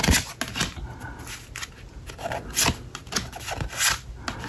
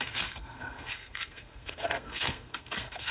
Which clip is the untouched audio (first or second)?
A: first